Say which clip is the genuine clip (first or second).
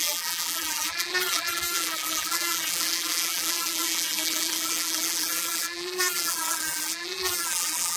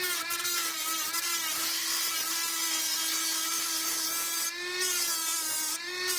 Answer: second